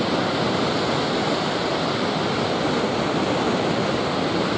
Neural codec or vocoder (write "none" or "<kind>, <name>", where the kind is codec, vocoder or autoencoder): none